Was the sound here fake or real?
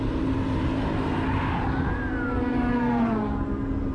real